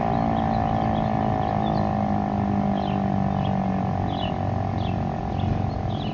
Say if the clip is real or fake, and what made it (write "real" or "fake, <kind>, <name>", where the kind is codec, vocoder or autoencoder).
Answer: real